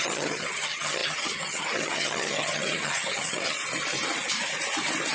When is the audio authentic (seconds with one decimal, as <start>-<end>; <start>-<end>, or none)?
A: 3.6-5.1